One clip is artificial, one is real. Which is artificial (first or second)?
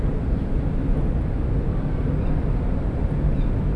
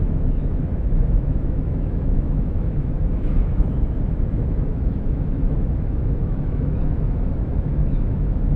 second